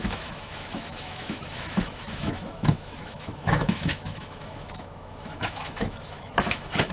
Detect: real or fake fake